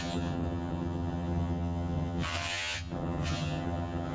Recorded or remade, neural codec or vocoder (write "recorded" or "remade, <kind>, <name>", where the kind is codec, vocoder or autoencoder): remade, vocoder, HiFi-GAN